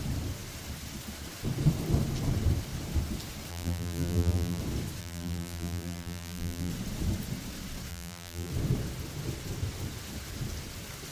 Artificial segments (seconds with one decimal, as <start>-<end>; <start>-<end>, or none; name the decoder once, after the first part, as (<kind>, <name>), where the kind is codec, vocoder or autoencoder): 3.5-4.6 (vocoder, BigVGAN v2); 5.0-6.7; 7.9-8.5